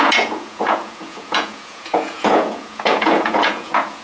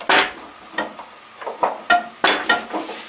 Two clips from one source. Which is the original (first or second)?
second